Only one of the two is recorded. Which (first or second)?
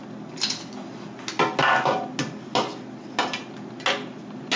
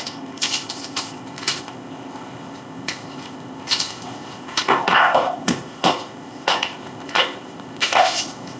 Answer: first